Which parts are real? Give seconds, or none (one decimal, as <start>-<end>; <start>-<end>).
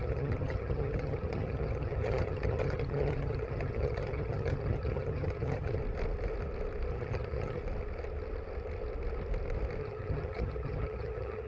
5.8-6.9; 7.6-9.8